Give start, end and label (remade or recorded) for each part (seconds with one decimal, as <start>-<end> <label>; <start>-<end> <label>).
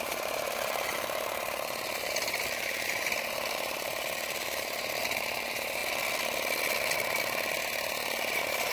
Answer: 0.0-5.8 remade; 5.8-7.6 recorded; 7.6-8.7 remade